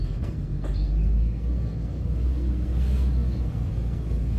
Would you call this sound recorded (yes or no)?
no